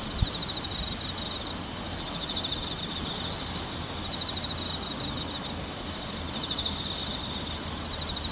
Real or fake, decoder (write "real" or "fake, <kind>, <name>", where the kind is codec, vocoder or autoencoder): real